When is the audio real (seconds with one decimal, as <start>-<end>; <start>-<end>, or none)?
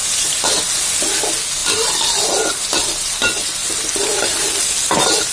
0.0-1.6; 2.8-3.6